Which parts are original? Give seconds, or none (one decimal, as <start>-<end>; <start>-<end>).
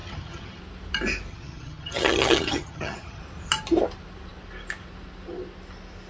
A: 0.6-1.3; 3.2-6.1